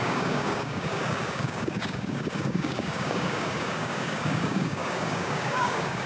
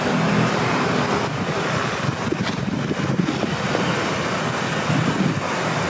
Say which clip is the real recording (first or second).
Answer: second